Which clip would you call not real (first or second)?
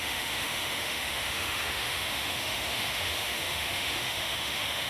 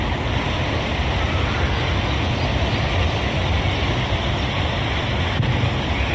first